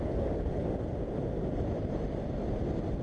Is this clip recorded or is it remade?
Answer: recorded